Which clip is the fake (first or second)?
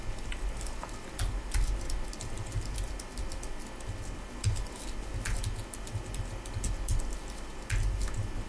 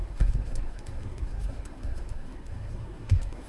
second